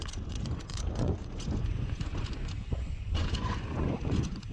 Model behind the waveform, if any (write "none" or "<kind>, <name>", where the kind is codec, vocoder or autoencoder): vocoder, Vocos